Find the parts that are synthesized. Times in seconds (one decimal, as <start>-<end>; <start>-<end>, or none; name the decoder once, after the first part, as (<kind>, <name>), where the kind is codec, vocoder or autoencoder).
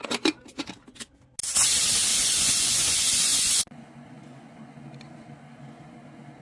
2.1-4.7 (vocoder, Vocos)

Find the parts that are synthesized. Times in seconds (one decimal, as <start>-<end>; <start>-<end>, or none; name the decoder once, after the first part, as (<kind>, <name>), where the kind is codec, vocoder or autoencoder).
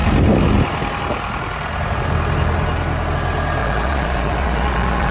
3.6-5.1 (vocoder, Vocos)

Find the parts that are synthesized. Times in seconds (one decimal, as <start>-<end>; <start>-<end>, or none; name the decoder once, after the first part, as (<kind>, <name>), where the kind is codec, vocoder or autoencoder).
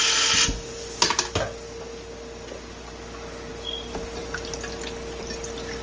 none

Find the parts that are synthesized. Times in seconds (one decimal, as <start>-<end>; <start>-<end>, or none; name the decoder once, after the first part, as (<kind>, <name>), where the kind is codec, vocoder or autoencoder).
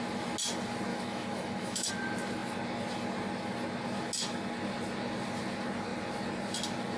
0.9-1.9 (autoencoder, DAC-VAE)